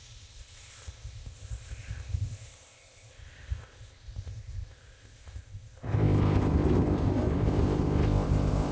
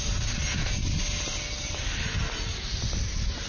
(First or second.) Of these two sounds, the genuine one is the second